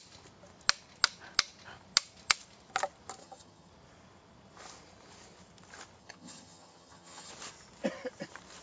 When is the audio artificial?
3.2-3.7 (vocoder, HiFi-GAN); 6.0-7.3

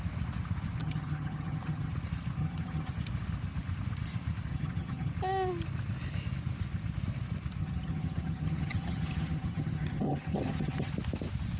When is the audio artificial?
0.8-1.9 (vocoder, HiFi-GAN); 2.4-2.9; 4.5-5.1; 7.6-10.9

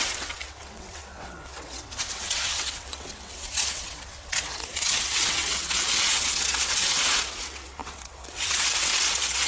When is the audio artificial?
0.0-9.5 (vocoder, WaveNeXt)

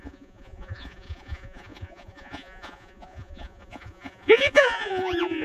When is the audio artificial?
0.0-5.4 (vocoder, Vocos)